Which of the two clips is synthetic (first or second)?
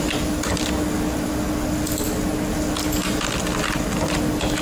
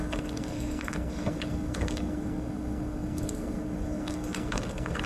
second